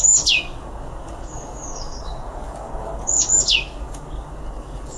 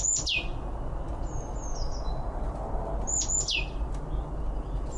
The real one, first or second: second